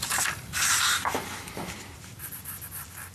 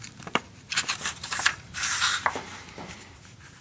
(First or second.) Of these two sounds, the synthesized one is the second